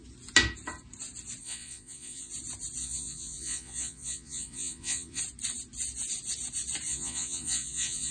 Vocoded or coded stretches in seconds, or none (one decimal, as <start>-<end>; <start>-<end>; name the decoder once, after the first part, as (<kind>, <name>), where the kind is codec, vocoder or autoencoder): 1.4-2.3 (vocoder, Vocos); 2.8-5.2; 6.9-8.1